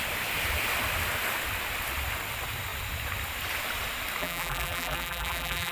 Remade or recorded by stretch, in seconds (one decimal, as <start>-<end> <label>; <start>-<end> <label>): 0.0-4.2 recorded; 4.2-5.7 remade